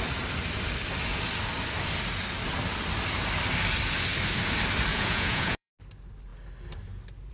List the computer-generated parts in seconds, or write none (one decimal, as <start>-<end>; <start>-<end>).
4.9-5.7